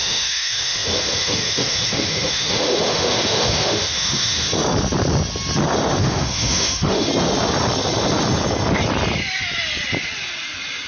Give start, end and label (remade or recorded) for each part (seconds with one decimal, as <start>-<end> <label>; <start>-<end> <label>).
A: 0.0-4.5 remade; 4.5-6.0 recorded; 6.0-7.1 remade; 7.1-10.9 recorded